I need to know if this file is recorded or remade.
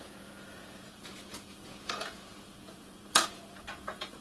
remade